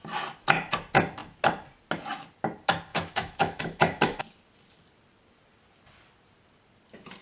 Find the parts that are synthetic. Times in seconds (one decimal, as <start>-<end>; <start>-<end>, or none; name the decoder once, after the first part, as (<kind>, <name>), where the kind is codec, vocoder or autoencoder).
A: 2.9-4.2 (autoencoder, DAC-VAE)